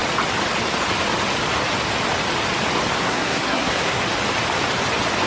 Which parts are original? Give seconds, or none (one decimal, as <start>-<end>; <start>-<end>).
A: 0.0-3.0; 4.0-5.3